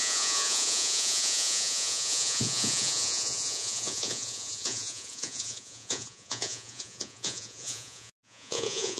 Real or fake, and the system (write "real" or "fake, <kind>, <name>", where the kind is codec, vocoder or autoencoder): fake, vocoder, Vocos